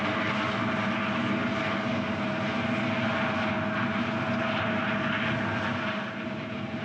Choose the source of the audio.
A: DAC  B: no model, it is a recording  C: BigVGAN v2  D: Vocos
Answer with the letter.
B